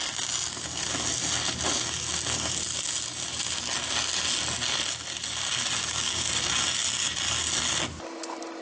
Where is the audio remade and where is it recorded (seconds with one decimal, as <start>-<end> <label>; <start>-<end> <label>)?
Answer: 0.0-5.8 recorded; 5.8-6.3 remade; 6.3-8.6 recorded